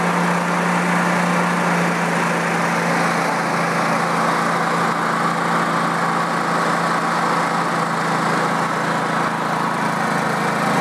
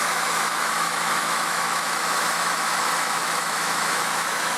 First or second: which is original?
first